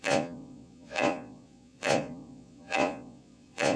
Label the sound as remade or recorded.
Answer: remade